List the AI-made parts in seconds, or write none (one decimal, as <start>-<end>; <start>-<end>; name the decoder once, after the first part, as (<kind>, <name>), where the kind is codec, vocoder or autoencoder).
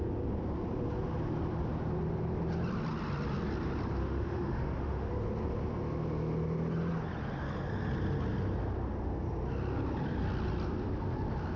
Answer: 4.0-5.1 (autoencoder, DAC-VAE)